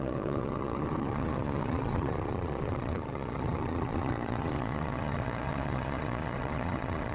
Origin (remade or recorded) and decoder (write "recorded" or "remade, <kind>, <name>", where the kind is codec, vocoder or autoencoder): remade, vocoder, Vocos